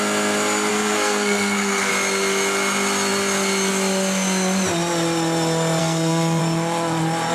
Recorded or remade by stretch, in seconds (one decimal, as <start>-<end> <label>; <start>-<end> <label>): 0.0-0.7 recorded; 0.7-1.9 remade; 1.9-5.8 recorded; 5.8-6.4 remade; 6.4-7.3 recorded